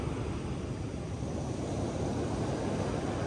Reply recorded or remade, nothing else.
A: recorded